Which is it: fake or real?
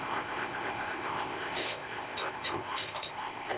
fake